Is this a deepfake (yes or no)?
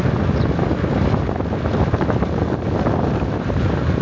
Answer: no